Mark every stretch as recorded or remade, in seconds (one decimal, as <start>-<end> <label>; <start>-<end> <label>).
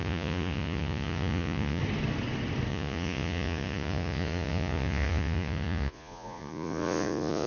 0.0-1.8 remade; 1.8-2.7 recorded; 2.7-7.5 remade